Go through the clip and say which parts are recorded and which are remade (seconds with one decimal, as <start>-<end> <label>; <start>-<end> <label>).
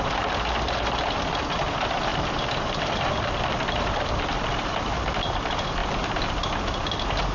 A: 0.0-2.1 recorded; 2.1-5.1 remade; 5.1-5.8 recorded; 5.8-6.3 remade; 6.3-7.3 recorded